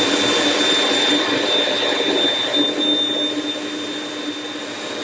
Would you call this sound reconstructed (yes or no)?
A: no